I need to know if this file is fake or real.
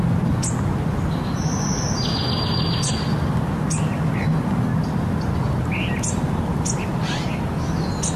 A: real